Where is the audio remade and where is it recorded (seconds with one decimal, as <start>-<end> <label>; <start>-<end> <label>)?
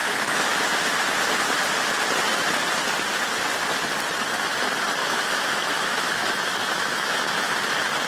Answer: 0.0-0.8 remade; 0.8-5.0 recorded; 5.0-7.5 remade; 7.5-8.1 recorded